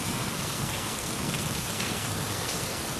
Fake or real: fake